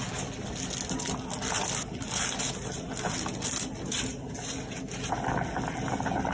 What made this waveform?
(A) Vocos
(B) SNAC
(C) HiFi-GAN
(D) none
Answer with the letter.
D